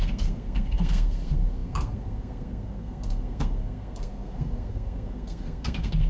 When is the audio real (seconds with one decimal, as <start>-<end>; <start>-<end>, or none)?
none